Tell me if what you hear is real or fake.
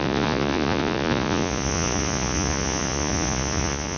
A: fake